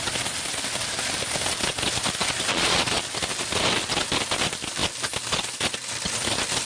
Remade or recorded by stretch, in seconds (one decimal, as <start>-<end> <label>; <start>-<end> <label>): 0.0-2.5 recorded; 2.5-3.0 remade; 3.0-6.6 recorded